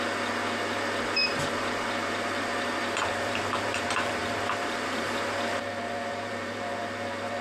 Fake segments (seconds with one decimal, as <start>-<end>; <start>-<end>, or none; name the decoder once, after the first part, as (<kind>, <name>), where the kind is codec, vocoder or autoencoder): 1.2-5.1 (vocoder, BigVGAN v2); 5.5-7.4